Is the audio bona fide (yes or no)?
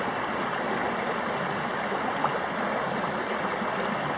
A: yes